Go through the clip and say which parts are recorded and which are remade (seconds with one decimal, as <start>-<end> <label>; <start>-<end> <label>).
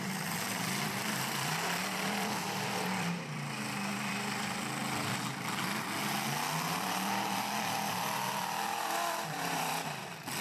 0.0-4.8 remade; 4.8-6.7 recorded; 6.7-10.4 remade